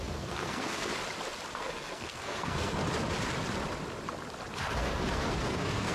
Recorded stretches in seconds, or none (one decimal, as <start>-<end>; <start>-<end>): 0.9-1.5; 2.8-4.6